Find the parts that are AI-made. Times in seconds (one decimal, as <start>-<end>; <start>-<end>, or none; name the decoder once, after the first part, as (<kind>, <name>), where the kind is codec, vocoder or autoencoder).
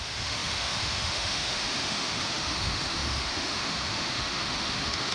0.0-5.1 (autoencoder, DAC-VAE)